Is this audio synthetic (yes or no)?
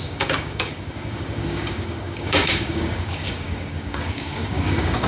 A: yes